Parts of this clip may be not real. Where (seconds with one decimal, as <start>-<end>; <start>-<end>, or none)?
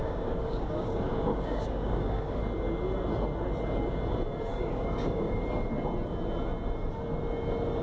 0.0-2.4; 4.5-5.4